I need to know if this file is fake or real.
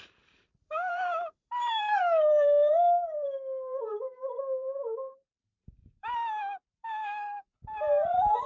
fake